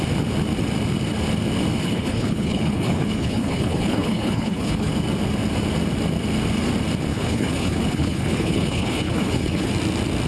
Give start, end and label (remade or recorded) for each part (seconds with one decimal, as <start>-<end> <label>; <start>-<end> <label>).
0.0-1.8 recorded; 1.8-4.9 remade; 4.9-7.1 recorded; 7.1-9.7 remade; 9.7-10.3 recorded